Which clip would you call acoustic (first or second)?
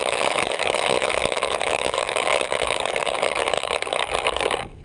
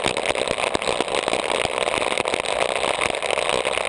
second